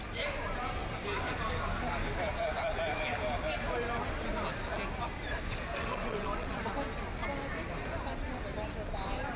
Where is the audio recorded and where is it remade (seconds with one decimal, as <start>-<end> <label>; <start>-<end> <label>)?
0.0-5.8 recorded; 5.8-6.6 remade; 6.6-9.4 recorded